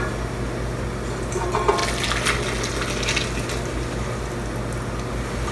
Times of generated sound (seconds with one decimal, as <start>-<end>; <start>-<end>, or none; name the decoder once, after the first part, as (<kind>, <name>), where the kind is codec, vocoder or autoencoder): none